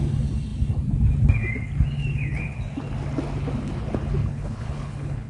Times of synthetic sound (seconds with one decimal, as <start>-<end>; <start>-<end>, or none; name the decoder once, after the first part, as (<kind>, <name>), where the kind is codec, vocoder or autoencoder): 4.2-5.3 (codec, HILCodec)